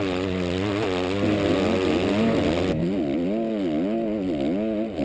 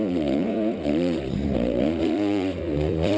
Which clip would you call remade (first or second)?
second